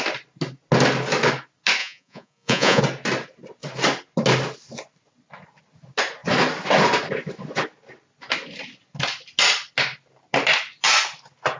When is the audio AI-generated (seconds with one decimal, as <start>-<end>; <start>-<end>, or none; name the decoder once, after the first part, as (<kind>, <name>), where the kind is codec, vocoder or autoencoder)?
1.8-2.8 (vocoder, Vocos)

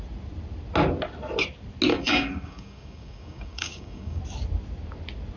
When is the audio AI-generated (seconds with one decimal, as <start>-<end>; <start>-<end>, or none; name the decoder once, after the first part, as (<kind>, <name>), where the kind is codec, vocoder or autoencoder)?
1.9-4.2 (codec, DAC)

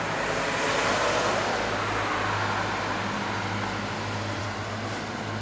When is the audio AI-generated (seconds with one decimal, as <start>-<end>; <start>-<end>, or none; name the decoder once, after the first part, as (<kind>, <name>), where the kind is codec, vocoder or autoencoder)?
none